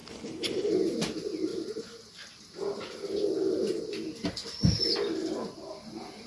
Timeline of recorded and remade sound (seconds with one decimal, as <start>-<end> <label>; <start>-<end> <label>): 0.0-0.7 remade; 0.7-6.3 recorded